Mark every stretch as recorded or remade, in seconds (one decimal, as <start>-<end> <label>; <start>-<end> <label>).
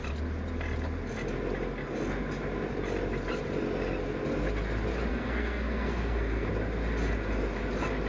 0.0-5.1 recorded; 5.1-6.5 remade; 6.5-8.1 recorded